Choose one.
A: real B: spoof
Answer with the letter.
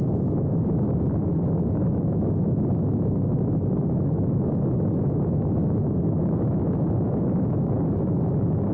B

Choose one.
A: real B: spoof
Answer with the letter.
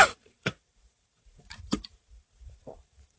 B